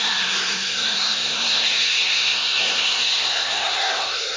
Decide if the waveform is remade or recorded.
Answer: remade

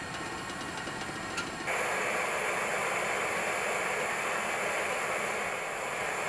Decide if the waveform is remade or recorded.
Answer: recorded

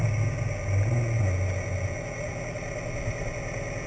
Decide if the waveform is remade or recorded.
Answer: recorded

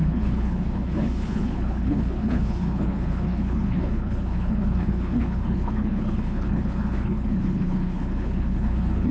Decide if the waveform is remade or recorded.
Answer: remade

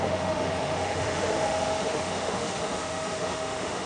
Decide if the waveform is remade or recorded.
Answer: remade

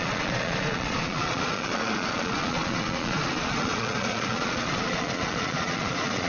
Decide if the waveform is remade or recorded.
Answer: remade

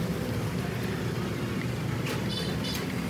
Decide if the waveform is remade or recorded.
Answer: recorded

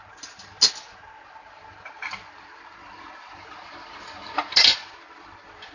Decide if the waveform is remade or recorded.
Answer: recorded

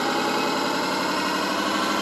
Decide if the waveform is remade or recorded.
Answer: remade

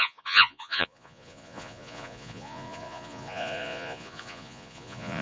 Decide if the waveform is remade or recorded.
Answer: remade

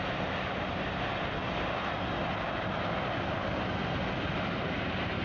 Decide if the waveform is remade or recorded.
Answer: recorded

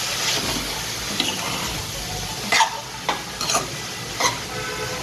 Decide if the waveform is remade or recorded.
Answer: recorded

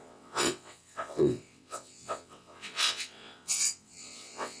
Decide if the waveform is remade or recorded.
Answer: remade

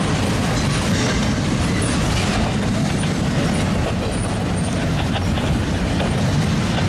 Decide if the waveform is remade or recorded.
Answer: recorded